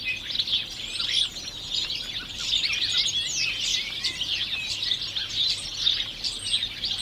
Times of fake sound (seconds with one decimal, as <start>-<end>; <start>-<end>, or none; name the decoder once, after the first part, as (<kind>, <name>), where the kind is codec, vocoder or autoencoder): none